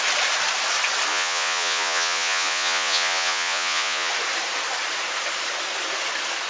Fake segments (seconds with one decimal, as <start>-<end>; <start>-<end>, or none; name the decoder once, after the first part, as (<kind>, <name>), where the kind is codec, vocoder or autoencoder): 1.1-4.1 (vocoder, Vocos)